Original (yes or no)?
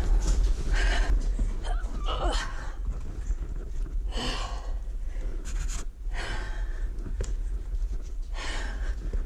yes